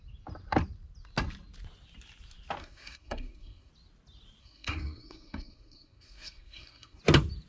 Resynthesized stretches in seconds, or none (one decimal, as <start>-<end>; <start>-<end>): 2.6-3.7; 4.4-7.0